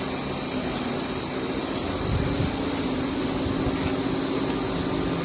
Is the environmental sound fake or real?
real